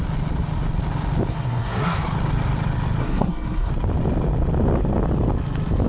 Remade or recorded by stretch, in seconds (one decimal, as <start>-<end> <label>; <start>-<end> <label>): 0.0-1.3 recorded; 1.3-2.0 remade; 2.0-3.0 recorded; 3.0-3.7 remade; 3.7-5.9 recorded